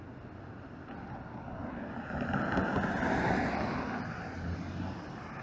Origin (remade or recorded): recorded